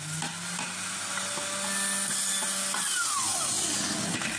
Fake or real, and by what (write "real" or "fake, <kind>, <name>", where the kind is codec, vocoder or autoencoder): real